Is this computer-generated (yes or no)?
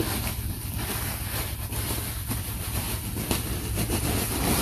no